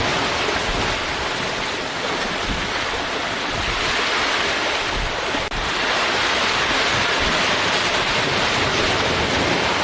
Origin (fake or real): real